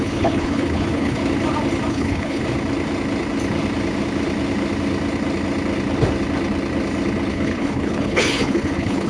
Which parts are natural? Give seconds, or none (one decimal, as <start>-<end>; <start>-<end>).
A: 1.2-1.9; 2.4-7.3